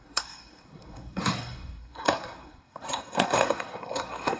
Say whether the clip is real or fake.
fake